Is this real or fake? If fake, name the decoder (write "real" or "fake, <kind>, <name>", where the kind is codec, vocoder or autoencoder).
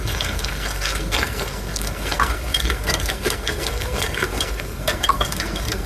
fake, codec, SNAC